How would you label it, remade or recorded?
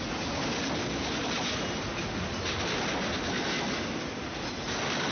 recorded